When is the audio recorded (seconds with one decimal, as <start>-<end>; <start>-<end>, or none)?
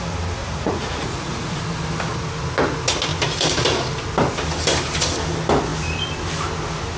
0.0-0.4; 1.6-7.0